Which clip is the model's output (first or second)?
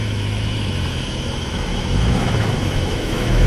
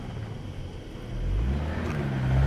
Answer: first